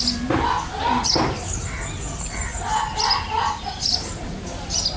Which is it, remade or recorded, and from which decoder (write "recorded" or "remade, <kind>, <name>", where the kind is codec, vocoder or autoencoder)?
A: recorded